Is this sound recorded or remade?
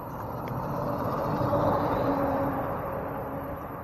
remade